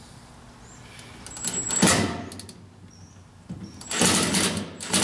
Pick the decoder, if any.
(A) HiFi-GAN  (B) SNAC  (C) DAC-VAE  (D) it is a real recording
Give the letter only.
D